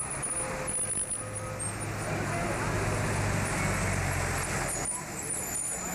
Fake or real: real